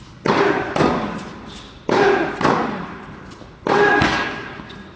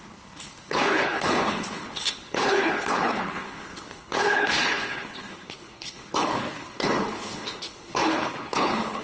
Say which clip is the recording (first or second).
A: first